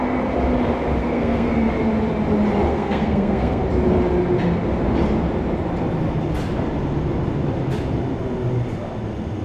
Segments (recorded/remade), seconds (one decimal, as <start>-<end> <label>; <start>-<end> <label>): 0.0-1.0 recorded; 1.0-1.7 remade; 1.7-2.7 recorded; 2.7-3.6 remade; 3.6-9.4 recorded